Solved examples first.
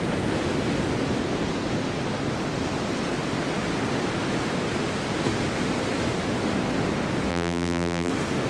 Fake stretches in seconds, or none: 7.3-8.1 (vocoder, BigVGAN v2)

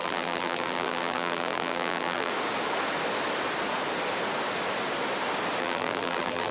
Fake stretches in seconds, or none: 0.0-2.3 (vocoder, BigVGAN v2); 5.6-6.5

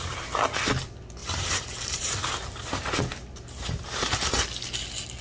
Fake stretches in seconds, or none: 1.2-4.3 (vocoder, BigVGAN v2)

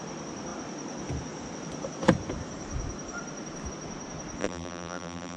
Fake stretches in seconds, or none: 4.4-5.4 (vocoder, BigVGAN v2)

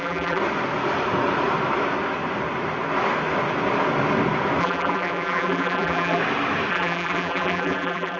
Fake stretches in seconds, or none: 0.0-0.4 (vocoder, BigVGAN v2); 4.6-6.2; 6.7-8.2